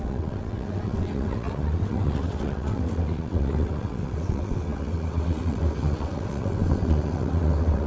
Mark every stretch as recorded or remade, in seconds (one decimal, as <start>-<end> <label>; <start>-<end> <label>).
0.0-7.9 remade